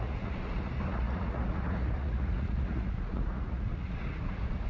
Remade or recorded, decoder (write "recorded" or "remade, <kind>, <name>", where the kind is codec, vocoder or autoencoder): remade, vocoder, Vocos